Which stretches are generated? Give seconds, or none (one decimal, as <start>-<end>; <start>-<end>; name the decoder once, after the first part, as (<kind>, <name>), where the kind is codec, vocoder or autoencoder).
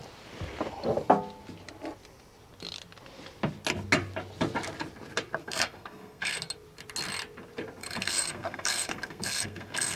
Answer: 5.4-6.4 (codec, SNAC); 7.8-10.0